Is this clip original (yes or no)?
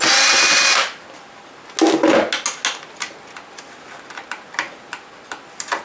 yes